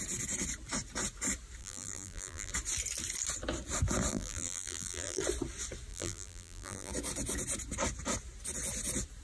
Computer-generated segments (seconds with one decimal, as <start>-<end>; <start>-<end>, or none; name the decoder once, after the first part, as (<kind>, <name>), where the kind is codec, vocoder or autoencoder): 1.6-2.5 (vocoder, BigVGAN v2); 4.1-5.2; 5.9-6.9